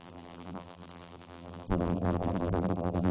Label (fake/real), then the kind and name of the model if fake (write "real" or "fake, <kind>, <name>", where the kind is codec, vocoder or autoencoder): fake, vocoder, BigVGAN v2